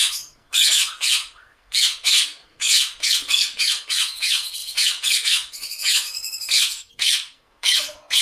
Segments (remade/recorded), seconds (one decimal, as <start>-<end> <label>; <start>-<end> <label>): 0.0-8.2 remade